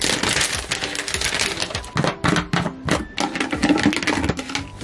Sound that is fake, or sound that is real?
real